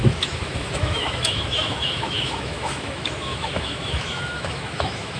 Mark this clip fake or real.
fake